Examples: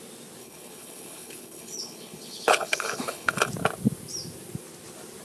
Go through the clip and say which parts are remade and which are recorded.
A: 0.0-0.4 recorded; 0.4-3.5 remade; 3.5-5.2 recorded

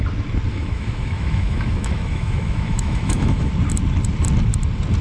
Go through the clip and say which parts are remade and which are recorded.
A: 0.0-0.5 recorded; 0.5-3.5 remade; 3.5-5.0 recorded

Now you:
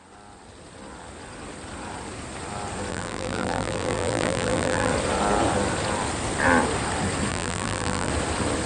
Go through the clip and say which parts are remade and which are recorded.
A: 0.0-2.9 recorded; 2.9-4.9 remade; 4.9-7.3 recorded; 7.3-8.1 remade; 8.1-8.7 recorded